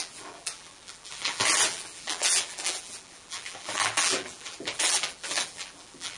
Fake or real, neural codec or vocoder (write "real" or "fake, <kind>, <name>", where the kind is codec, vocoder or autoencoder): fake, vocoder, BigVGAN v2